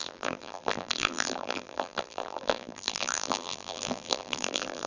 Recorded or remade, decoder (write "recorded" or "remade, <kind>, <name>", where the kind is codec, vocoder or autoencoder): remade, vocoder, BigVGAN v2